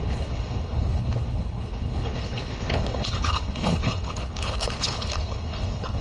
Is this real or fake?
fake